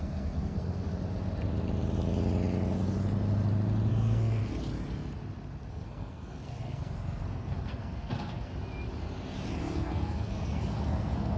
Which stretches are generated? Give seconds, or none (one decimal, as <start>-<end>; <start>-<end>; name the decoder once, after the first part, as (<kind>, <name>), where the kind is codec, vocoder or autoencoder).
0.0-0.9 (codec, SNAC); 3.9-4.4; 5.7-8.5; 9.6-11.4